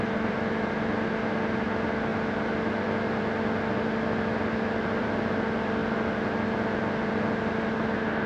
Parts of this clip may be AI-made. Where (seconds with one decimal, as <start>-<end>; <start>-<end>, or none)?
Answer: none